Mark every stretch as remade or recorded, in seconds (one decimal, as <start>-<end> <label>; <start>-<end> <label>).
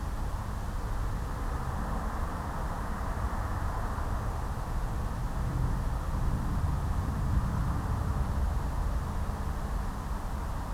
0.0-10.7 recorded